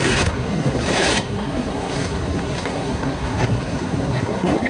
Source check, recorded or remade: remade